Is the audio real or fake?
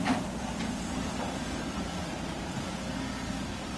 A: fake